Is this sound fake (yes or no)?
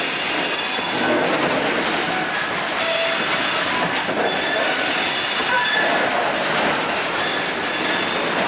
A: no